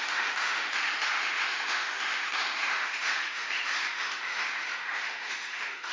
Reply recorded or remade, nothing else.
remade